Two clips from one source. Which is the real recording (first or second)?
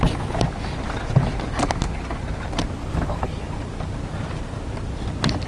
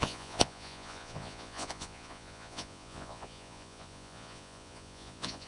first